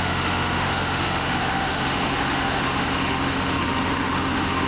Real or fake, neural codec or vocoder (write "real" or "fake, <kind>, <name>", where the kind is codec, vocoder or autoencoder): fake, autoencoder, DAC-VAE